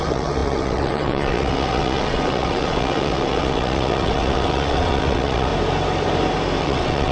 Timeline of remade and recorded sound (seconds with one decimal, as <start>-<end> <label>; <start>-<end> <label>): 0.0-5.5 remade; 5.5-6.6 recorded; 6.6-7.1 remade